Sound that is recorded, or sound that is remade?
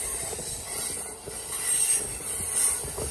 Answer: recorded